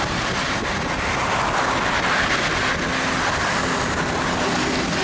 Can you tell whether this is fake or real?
real